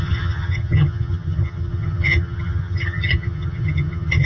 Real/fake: fake